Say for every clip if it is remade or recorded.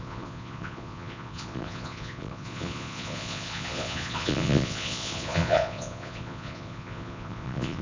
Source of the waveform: remade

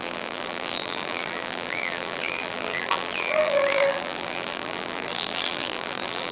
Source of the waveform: remade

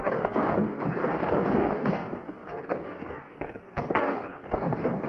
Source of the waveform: remade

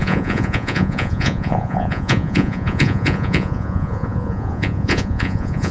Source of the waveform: remade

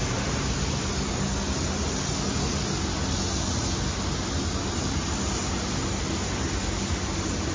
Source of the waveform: recorded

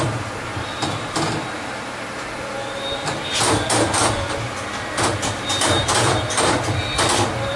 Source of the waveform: remade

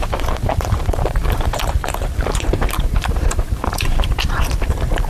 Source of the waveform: remade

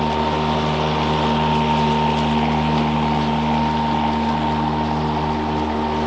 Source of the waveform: recorded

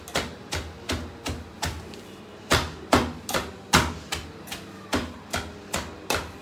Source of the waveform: recorded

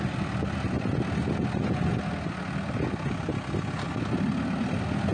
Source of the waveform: recorded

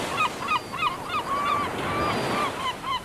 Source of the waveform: recorded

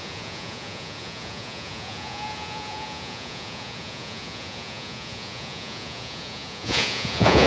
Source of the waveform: remade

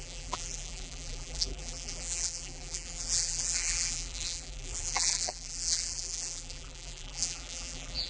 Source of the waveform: remade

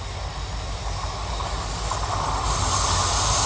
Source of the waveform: recorded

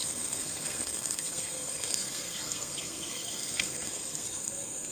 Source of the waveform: remade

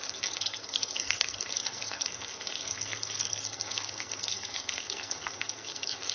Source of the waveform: remade